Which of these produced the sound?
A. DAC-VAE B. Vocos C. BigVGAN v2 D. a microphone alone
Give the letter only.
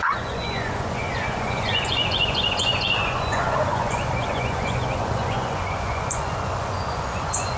B